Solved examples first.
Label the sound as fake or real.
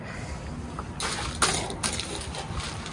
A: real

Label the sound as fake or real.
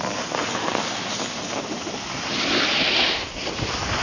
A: real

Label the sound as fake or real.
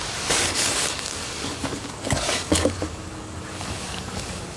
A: fake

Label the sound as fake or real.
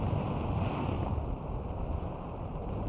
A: real